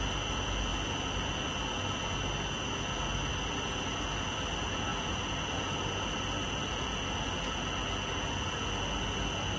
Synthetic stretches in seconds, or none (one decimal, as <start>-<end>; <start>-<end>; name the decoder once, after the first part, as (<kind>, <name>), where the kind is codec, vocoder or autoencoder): none